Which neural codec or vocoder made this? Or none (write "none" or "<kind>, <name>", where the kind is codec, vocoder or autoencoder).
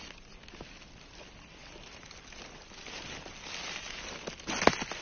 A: none